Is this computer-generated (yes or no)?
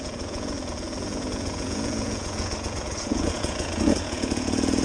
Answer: yes